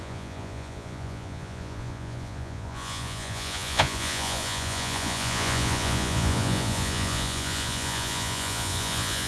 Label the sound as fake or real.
fake